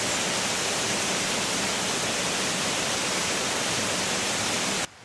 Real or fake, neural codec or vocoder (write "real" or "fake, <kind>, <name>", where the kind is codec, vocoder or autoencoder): real